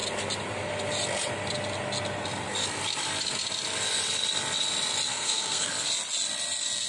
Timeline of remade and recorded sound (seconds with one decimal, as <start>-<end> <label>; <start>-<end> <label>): 0.0-5.1 recorded; 5.1-5.7 remade; 5.7-6.9 recorded